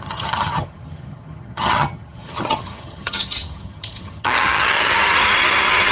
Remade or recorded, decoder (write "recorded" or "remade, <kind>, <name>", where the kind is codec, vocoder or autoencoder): remade, vocoder, HiFi-GAN